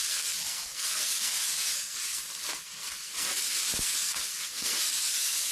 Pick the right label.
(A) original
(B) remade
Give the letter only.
B